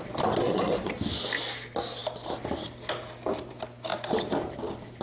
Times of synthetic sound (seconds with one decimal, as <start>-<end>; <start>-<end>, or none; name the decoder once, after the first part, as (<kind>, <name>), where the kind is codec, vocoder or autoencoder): 0.4-0.9 (codec, SNAC)